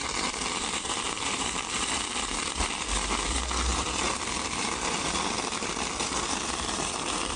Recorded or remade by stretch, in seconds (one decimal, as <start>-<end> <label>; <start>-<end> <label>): 0.0-2.8 remade; 2.8-3.7 recorded; 3.7-5.7 remade; 5.7-7.4 recorded